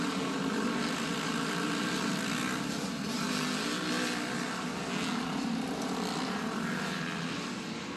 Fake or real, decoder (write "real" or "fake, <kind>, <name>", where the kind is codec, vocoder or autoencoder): real